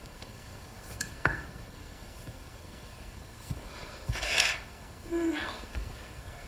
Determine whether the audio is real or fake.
fake